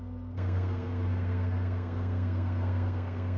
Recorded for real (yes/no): no